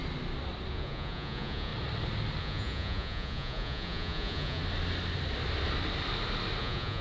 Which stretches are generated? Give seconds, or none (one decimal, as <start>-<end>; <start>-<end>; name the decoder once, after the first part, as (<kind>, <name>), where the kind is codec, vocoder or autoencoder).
0.7-1.7 (vocoder, Vocos); 2.4-4.6; 6.6-7.0